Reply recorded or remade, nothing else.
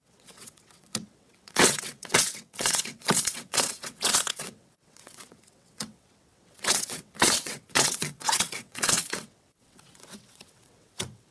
remade